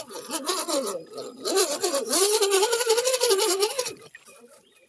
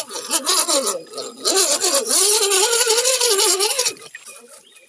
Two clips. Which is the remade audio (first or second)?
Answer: first